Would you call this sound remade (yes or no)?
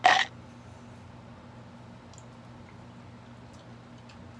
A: no